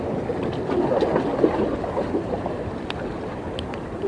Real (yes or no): yes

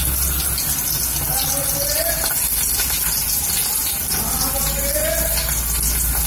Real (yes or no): yes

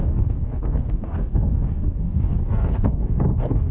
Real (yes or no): no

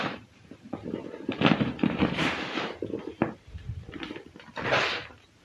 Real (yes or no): no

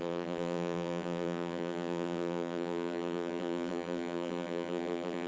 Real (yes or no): no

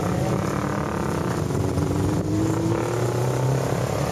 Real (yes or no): yes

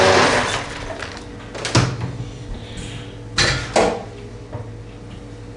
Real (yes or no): yes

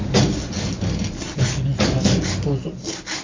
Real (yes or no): yes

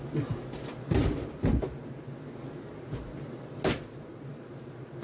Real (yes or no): yes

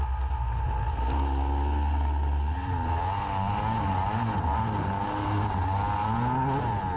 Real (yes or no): yes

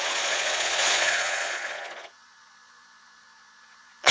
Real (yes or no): no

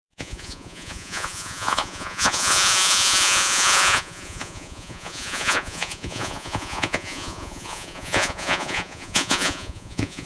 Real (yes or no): no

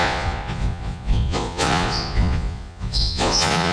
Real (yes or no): no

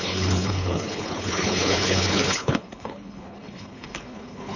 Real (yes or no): no